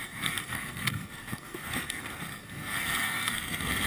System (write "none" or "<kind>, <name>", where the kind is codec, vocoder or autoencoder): codec, SNAC